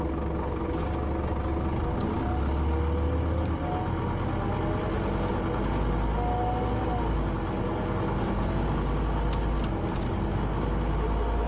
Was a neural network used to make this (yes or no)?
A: no